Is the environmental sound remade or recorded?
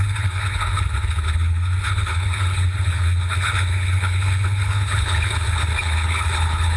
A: remade